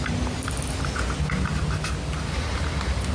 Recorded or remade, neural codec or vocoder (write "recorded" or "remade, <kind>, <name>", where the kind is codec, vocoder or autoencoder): recorded